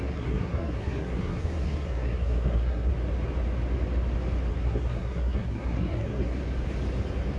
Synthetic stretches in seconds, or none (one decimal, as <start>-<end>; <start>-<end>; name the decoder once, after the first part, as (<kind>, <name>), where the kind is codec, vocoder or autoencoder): 0.0-2.9 (codec, SNAC); 4.5-6.4

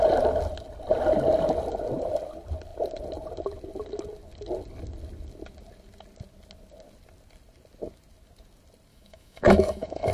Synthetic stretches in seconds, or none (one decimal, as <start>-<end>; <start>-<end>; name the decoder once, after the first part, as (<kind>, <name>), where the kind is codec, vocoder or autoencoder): 8.9-10.1 (autoencoder, DAC-VAE)

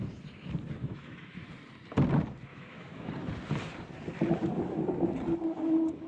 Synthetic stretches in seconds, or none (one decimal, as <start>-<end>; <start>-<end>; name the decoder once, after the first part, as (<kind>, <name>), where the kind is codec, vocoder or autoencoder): 0.8-1.5 (autoencoder, DAC-VAE); 2.5-3.1

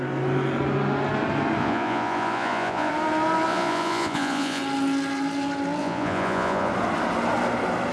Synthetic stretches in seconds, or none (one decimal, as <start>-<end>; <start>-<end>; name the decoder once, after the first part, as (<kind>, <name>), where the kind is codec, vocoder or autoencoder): 1.6-2.9 (vocoder, Vocos); 3.5-4.6; 5.8-6.7